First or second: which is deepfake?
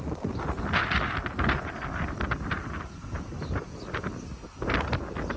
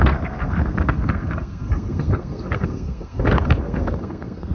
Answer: second